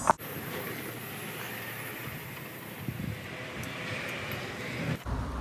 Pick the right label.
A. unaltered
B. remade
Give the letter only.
A